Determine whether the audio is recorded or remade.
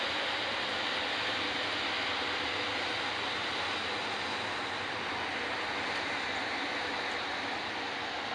recorded